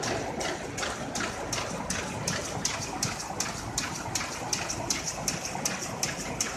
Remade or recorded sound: recorded